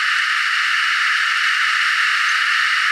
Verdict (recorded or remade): recorded